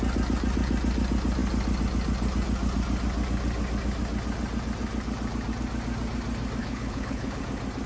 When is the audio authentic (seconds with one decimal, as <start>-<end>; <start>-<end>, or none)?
0.0-6.6; 7.4-7.9